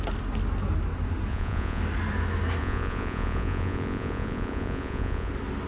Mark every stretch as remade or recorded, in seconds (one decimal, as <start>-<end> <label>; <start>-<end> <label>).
0.0-1.3 recorded; 1.3-1.8 remade; 1.8-2.6 recorded; 2.6-5.3 remade; 5.3-5.7 recorded